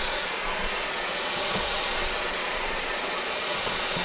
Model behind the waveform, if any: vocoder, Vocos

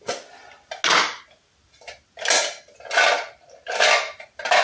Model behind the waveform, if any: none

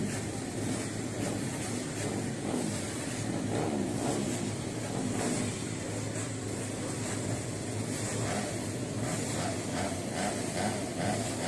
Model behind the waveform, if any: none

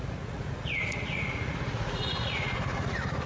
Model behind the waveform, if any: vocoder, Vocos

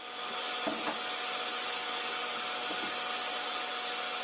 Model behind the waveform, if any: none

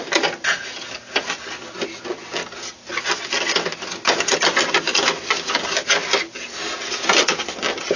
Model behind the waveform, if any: none